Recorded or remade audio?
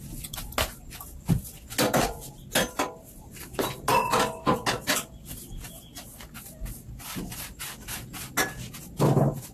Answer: recorded